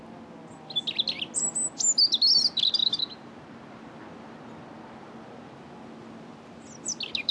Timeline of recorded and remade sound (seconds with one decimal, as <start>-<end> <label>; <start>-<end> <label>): 0.0-7.3 recorded